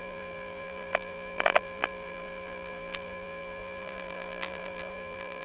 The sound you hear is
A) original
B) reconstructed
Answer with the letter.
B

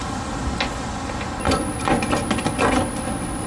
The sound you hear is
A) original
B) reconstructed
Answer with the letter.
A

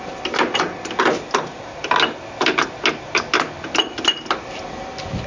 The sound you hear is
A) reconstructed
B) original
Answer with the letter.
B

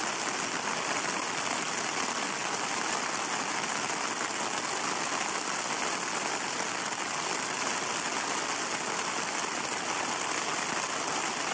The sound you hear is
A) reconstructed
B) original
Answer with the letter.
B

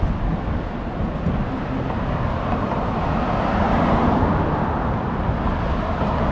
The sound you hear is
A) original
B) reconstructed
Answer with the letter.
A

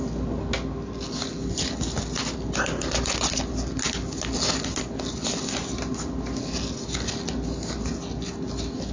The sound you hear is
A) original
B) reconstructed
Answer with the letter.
A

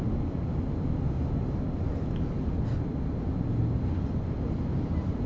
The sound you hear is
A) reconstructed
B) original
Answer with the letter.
B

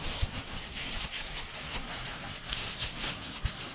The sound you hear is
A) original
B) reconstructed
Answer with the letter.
B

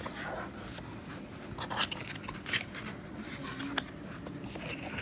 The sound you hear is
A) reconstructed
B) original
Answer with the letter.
B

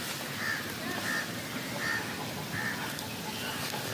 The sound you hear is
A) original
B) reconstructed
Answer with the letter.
A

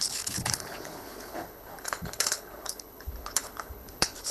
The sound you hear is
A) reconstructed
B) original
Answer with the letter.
A